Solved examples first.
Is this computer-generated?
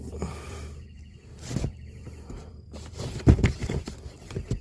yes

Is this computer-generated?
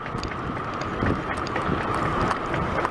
no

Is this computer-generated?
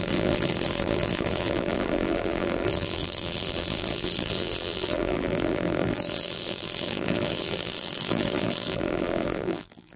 yes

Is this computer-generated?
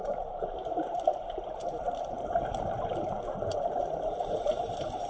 yes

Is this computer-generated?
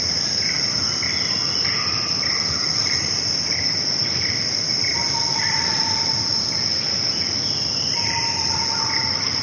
yes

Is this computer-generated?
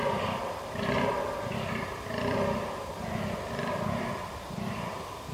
yes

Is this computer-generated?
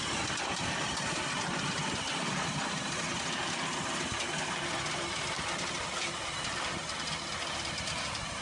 yes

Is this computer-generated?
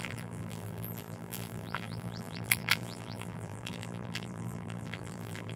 yes